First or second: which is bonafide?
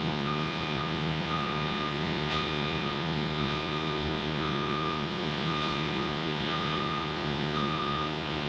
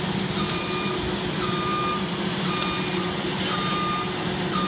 second